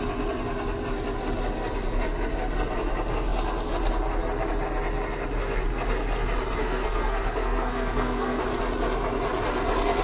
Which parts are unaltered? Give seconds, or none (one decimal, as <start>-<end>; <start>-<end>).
0.0-6.6; 8.4-10.0